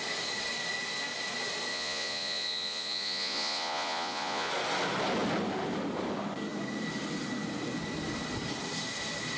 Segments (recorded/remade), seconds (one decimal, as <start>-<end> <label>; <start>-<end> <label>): 0.0-1.7 recorded; 1.7-4.5 remade; 4.5-9.4 recorded